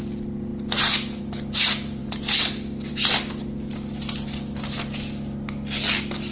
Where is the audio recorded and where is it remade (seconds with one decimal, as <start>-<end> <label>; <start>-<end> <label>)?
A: 0.0-6.3 recorded